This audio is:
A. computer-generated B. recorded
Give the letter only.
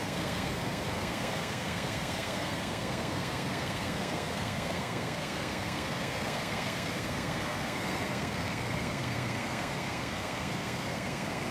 A